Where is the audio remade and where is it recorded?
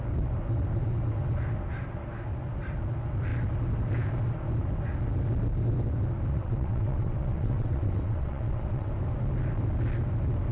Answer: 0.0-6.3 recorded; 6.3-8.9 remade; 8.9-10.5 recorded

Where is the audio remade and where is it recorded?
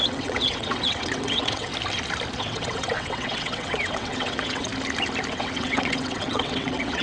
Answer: 0.0-1.7 remade; 1.7-2.4 recorded; 2.4-4.7 remade; 4.7-5.3 recorded; 5.3-7.0 remade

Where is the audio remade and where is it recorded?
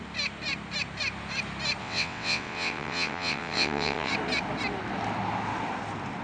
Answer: 0.0-1.8 recorded; 1.8-4.1 remade; 4.1-6.2 recorded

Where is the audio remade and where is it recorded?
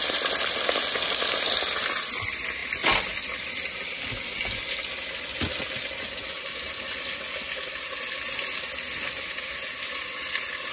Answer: 0.0-10.7 recorded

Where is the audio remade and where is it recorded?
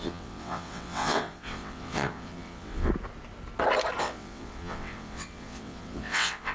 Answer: 0.0-2.9 remade; 2.9-4.0 recorded; 4.0-6.5 remade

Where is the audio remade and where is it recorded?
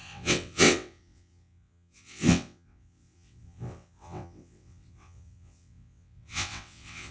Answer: 0.0-7.1 remade